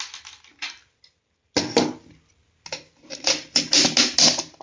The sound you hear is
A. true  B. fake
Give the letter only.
A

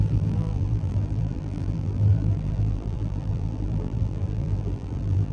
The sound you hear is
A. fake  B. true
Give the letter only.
A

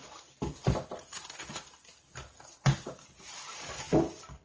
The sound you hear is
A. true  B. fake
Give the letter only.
A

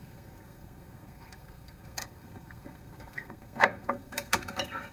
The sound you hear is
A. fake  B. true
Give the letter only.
A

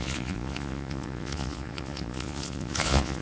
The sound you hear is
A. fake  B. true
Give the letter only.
A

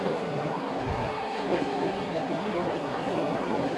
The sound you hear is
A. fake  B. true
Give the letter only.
A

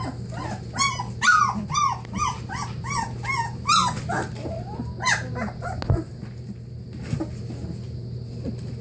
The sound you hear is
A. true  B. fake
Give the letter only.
A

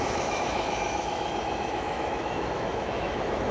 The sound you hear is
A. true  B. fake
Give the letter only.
B